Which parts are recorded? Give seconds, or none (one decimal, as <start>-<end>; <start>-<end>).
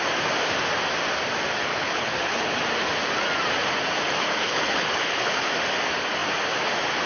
0.0-1.7; 2.6-4.2; 5.5-7.1